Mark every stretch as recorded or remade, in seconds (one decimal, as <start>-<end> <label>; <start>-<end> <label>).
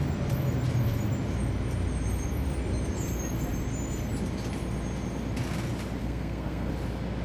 0.0-6.0 recorded; 6.0-6.7 remade; 6.7-7.2 recorded